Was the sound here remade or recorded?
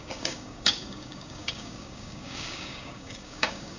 remade